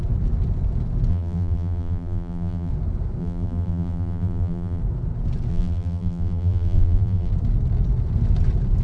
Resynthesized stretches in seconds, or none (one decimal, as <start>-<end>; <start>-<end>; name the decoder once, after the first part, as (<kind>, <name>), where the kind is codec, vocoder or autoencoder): 1.1-2.7 (vocoder, BigVGAN v2); 3.2-4.8; 5.5-7.3